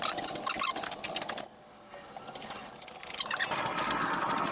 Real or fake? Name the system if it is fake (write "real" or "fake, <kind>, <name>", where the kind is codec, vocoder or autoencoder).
real